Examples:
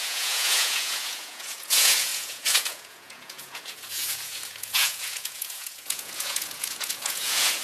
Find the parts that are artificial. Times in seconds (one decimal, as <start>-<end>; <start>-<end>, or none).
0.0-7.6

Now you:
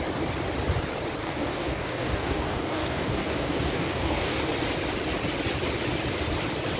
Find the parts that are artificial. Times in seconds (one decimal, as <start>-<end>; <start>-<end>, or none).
1.2-4.5

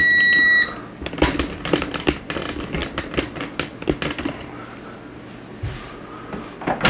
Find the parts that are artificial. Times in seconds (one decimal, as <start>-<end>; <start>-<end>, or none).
none